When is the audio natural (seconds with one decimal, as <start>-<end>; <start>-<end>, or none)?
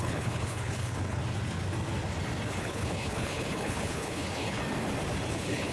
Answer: 1.2-2.5; 4.6-5.3